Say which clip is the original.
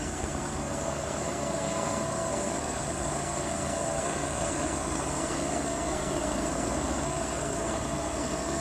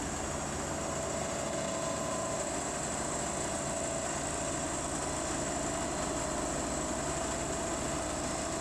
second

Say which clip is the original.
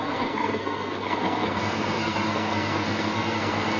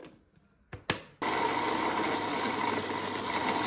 second